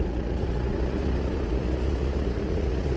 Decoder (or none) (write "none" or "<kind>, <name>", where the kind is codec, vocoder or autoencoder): vocoder, Vocos